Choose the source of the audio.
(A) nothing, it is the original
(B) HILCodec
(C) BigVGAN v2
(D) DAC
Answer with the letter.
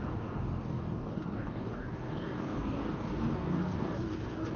D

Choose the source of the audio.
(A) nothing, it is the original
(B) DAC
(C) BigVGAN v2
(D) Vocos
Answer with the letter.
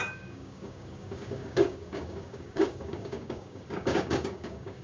B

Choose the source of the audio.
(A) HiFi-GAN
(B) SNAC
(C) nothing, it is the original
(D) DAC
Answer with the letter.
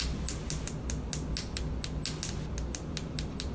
C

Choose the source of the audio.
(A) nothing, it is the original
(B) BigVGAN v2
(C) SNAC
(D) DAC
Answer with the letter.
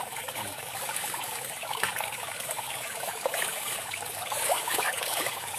D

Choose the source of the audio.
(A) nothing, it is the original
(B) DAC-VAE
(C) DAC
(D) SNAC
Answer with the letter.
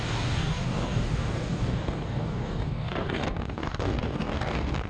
C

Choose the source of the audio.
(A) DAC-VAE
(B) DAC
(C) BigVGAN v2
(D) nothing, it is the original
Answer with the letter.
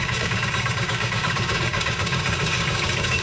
B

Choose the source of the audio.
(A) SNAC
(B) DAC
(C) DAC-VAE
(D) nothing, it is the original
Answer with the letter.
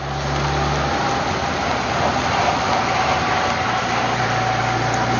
D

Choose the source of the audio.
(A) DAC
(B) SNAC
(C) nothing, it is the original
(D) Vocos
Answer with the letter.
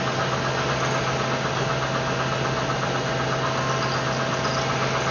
C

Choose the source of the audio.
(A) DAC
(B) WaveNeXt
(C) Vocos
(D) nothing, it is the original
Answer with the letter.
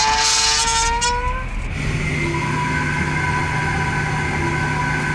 D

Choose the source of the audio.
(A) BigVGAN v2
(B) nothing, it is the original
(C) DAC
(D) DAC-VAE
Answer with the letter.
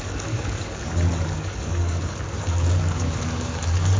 C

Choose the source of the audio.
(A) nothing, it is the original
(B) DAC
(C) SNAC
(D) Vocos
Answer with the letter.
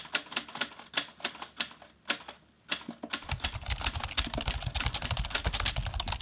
A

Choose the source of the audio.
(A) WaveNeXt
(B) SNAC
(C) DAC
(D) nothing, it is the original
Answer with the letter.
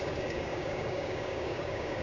C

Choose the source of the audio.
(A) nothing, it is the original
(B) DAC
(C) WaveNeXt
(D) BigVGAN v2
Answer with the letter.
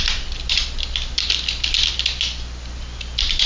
A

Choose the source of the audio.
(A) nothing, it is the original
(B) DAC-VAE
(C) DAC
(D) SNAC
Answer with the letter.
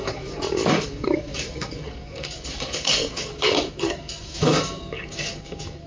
C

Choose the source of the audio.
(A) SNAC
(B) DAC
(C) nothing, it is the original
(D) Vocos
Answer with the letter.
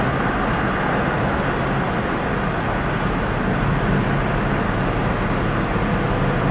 C